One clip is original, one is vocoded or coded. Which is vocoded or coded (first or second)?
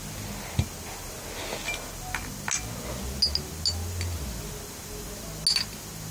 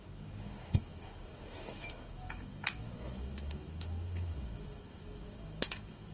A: second